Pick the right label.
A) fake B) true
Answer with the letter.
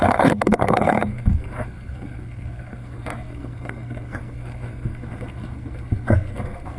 A